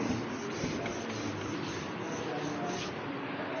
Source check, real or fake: real